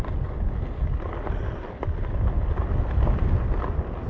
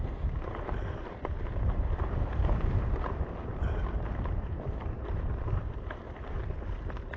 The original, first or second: first